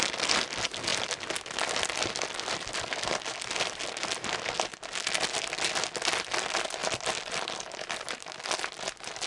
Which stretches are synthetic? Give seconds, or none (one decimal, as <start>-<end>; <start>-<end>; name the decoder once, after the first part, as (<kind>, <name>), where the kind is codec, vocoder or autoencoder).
none